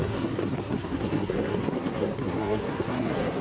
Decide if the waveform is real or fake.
fake